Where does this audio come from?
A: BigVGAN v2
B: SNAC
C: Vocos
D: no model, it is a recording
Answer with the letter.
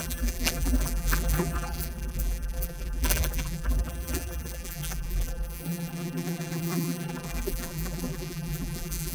A